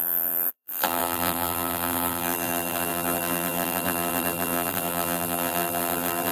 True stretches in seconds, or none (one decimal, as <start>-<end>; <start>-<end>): none